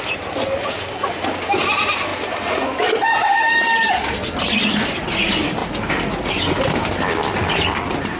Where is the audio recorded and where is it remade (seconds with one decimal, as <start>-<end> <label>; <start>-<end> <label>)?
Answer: 0.0-8.2 recorded